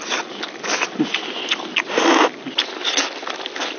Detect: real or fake real